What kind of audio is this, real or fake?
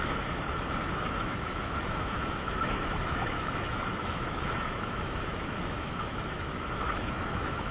fake